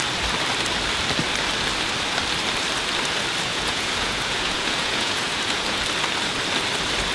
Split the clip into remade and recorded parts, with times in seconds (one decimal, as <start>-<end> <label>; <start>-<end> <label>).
0.0-3.5 recorded; 3.5-5.8 remade; 5.8-7.1 recorded